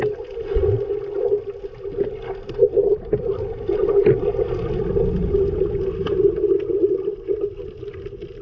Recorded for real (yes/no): yes